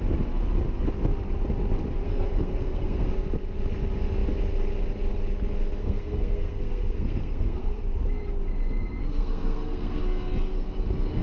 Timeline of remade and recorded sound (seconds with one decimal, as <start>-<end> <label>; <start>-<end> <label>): 0.0-2.0 recorded; 2.0-3.1 remade; 3.1-5.8 recorded; 5.8-7.8 remade; 7.8-9.0 recorded; 9.0-10.0 remade; 10.0-11.2 recorded